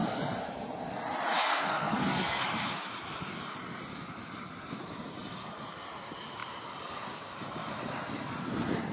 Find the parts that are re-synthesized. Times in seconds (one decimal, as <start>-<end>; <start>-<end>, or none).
1.4-2.4